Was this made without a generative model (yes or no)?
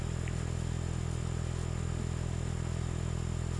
yes